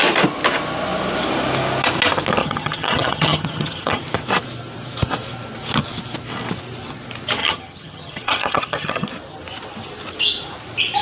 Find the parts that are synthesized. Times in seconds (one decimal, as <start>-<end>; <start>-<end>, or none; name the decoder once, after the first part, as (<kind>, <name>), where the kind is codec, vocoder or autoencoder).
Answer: 2.4-4.0 (vocoder, HiFi-GAN); 7.4-9.1